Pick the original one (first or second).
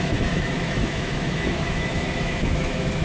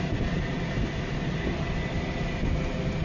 second